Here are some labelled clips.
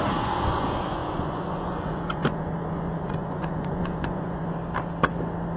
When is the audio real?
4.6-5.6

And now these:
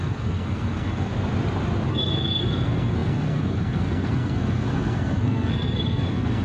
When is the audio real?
1.1-1.9

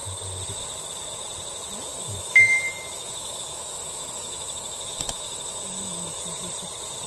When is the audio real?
0.0-1.9; 6.2-7.1

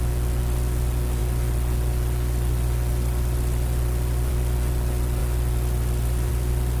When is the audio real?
0.0-6.8

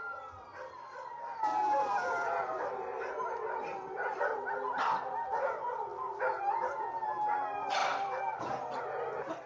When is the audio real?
0.0-0.5; 3.1-5.9; 6.5-7.8; 8.8-9.5

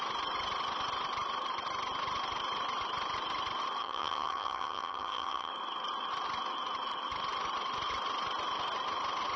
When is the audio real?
0.0-3.8; 5.5-9.4